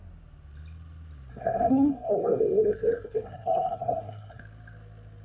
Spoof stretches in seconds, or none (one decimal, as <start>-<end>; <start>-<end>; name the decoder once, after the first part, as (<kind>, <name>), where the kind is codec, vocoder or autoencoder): 1.3-4.4 (codec, SNAC)